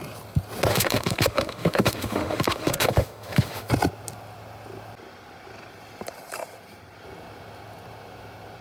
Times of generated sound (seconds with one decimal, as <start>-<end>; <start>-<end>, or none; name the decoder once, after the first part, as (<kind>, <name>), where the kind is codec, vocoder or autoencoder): 0.7-3.7 (autoencoder, DAC-VAE)